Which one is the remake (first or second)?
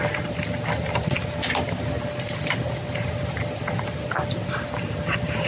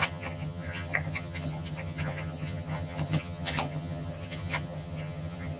second